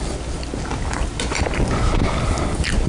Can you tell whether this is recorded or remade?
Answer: recorded